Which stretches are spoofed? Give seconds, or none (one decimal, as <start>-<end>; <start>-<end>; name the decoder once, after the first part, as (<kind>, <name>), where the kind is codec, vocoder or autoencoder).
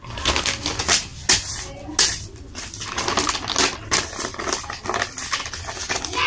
none